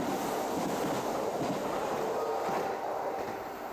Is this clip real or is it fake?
real